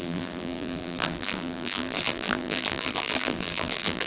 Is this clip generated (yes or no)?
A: yes